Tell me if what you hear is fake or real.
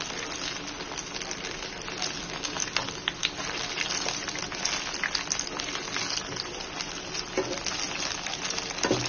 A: real